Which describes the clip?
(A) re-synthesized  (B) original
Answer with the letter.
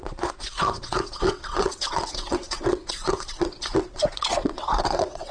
A